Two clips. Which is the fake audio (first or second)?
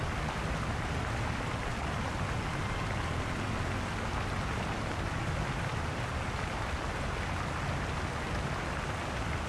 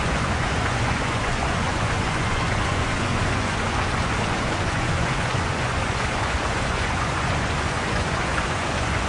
second